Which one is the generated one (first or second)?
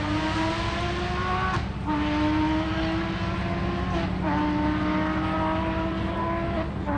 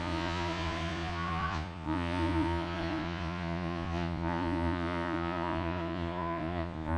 second